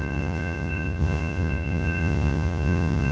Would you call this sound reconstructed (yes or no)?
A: yes